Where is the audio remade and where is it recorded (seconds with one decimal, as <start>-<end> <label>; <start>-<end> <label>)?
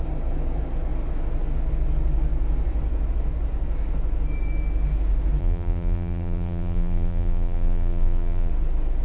0.0-5.4 recorded; 5.4-8.5 remade; 8.5-9.0 recorded